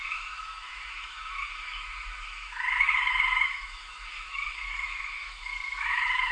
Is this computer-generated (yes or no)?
yes